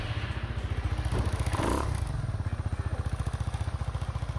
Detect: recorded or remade recorded